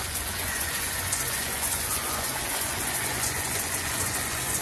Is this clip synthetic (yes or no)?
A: yes